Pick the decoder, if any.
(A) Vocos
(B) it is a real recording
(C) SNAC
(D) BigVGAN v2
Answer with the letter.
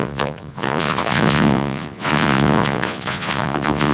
A